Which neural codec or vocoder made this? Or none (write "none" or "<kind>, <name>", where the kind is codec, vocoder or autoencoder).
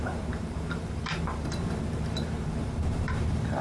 vocoder, BigVGAN v2